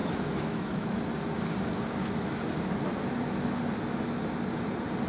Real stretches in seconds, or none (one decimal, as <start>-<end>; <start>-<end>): 1.0-2.0; 2.5-5.1